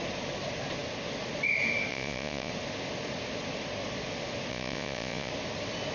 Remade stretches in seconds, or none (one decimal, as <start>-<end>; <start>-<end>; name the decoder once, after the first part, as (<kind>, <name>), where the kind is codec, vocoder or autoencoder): 1.9-2.5 (vocoder, Vocos); 4.5-5.3